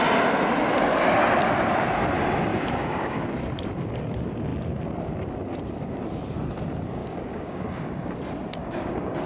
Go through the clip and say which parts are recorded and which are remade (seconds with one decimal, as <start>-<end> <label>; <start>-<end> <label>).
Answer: 0.0-2.5 recorded; 2.5-3.3 remade; 3.3-7.0 recorded; 7.0-7.9 remade; 7.9-8.6 recorded; 8.6-9.3 remade